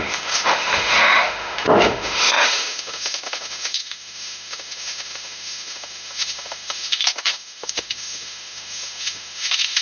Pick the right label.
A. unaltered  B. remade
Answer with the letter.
B